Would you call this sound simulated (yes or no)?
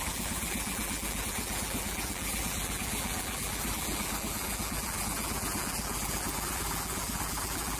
yes